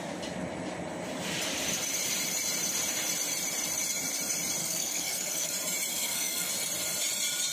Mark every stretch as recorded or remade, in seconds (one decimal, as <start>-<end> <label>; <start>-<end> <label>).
0.0-4.6 recorded; 4.6-5.5 remade; 5.5-5.9 recorded; 5.9-6.5 remade; 6.5-7.5 recorded